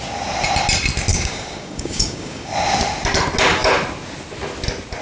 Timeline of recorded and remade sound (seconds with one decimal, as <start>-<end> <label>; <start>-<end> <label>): 0.0-1.1 recorded; 1.1-2.5 remade; 2.5-5.0 recorded